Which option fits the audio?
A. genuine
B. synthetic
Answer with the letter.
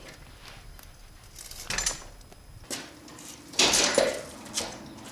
A